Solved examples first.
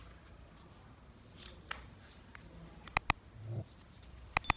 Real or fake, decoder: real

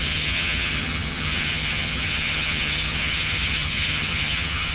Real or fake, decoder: fake, vocoder, HiFi-GAN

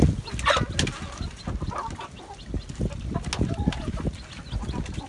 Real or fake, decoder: real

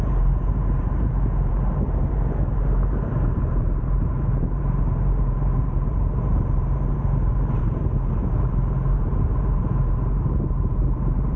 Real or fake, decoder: fake, vocoder, BigVGAN v2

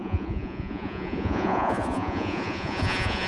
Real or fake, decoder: fake, vocoder, Vocos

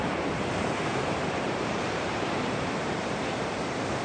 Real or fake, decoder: fake, vocoder, BigVGAN v2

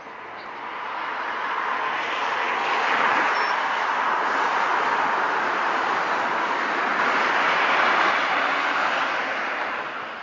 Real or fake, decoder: real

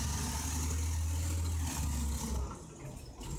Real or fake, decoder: real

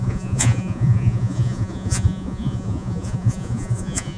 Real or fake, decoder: fake, vocoder, Vocos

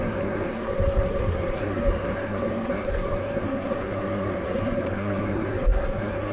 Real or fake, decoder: fake, codec, SNAC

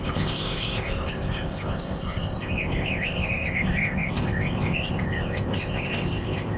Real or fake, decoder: fake, codec, ZipCodec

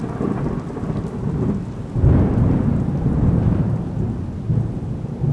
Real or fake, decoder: real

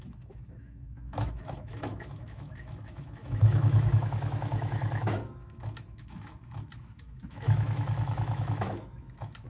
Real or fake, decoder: fake, autoencoder, DAC-VAE